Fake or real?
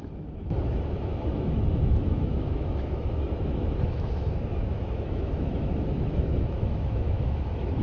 fake